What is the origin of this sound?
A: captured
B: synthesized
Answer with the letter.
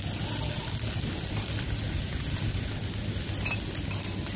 A